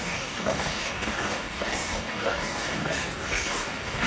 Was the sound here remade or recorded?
remade